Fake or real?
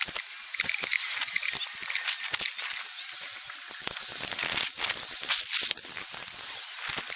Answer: fake